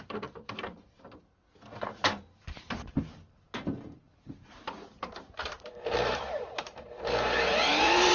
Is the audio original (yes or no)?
no